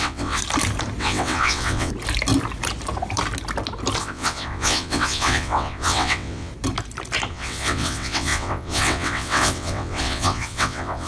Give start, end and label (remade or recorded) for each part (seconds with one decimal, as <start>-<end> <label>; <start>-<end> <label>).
0.0-0.4 remade; 0.4-1.0 recorded; 1.0-1.9 remade; 1.9-4.0 recorded; 4.0-6.5 remade; 6.5-7.3 recorded; 7.3-11.1 remade

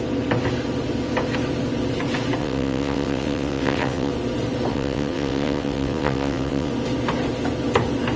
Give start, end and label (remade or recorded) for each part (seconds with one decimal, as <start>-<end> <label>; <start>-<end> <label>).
0.0-2.4 recorded; 2.4-4.1 remade; 4.1-4.7 recorded; 4.7-6.7 remade; 6.7-8.2 recorded